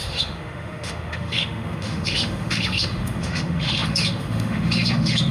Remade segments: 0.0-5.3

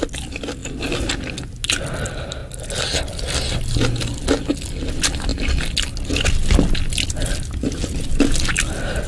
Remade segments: none

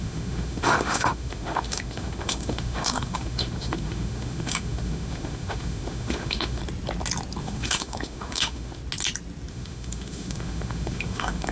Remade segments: 0.0-6.6; 7.4-8.8; 9.5-11.5